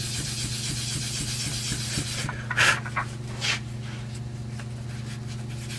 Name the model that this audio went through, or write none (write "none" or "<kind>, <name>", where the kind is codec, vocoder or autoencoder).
none